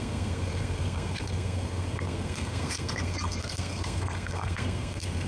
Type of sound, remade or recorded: remade